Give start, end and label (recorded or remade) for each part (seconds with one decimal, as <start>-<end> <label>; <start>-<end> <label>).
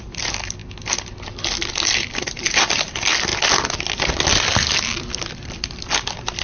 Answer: 0.0-0.6 remade; 0.6-2.1 recorded; 2.1-3.3 remade; 3.3-5.2 recorded; 5.2-6.4 remade